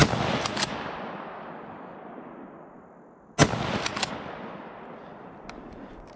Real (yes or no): yes